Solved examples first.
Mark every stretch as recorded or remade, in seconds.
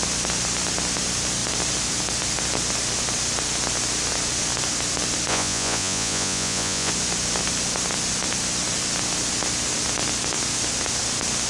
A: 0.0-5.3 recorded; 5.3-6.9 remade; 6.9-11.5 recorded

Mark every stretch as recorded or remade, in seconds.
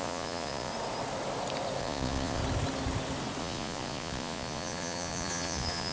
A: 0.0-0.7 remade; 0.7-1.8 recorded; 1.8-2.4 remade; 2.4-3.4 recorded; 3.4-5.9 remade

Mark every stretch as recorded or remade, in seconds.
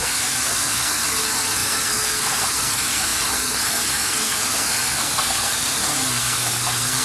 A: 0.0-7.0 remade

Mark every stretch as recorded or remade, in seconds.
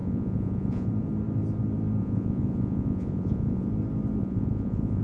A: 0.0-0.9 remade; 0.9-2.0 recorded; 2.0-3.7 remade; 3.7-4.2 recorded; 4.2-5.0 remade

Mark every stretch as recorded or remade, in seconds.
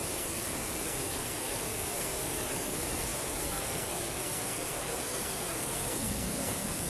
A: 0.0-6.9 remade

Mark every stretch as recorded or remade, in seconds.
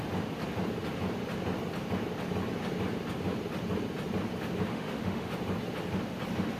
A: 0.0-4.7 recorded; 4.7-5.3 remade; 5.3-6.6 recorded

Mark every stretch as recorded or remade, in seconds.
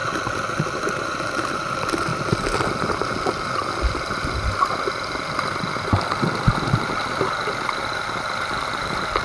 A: 0.0-9.2 recorded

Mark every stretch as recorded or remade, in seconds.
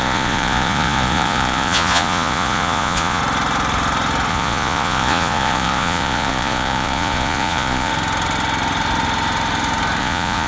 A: 0.0-3.2 remade; 3.2-4.3 recorded; 4.3-7.9 remade; 7.9-10.0 recorded; 10.0-10.5 remade